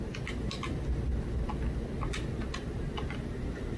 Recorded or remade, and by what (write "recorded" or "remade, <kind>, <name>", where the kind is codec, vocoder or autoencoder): recorded